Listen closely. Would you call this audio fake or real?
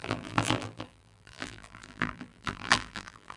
fake